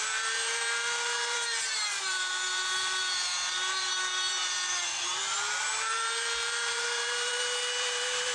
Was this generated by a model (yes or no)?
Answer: yes